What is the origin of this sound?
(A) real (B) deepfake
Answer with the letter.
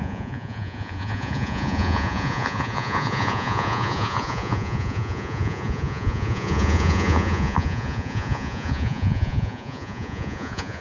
B